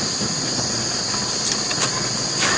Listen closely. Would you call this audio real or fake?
real